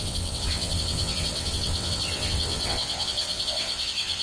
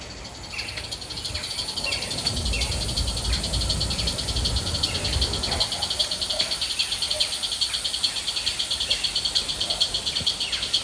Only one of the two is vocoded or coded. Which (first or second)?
first